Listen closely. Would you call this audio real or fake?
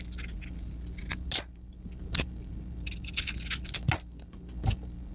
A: real